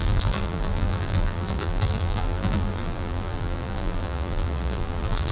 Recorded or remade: remade